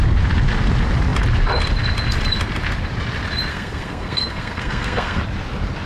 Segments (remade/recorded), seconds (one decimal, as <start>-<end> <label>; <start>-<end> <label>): 0.0-3.5 recorded; 3.5-5.2 remade; 5.2-5.9 recorded